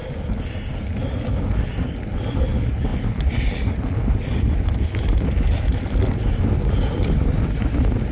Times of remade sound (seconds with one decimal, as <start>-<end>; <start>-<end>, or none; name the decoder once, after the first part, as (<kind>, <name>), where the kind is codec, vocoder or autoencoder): none